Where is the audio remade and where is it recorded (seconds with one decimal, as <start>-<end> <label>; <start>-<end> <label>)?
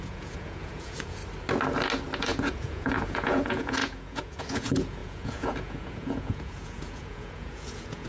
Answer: 0.0-1.2 remade; 1.2-2.2 recorded; 2.2-8.1 remade